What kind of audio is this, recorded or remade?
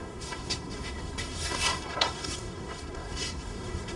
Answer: remade